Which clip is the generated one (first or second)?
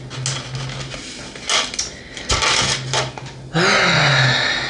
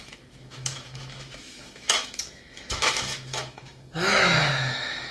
second